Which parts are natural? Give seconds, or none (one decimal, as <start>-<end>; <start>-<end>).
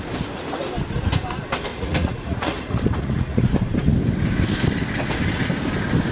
0.0-1.7; 3.5-6.1